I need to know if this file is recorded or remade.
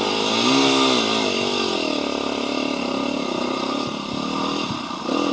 recorded